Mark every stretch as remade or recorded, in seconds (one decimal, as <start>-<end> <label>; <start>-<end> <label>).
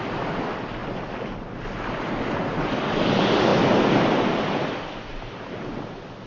0.0-5.1 recorded; 5.1-5.7 remade; 5.7-6.3 recorded